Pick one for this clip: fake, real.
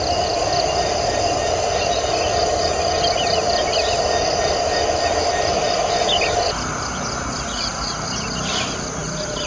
real